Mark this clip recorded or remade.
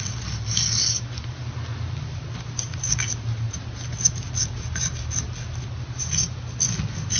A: recorded